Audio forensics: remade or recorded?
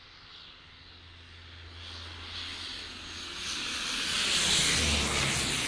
recorded